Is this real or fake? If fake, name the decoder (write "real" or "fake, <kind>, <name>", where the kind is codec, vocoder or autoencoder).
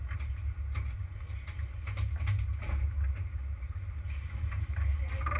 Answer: real